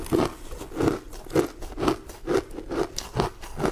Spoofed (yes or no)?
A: no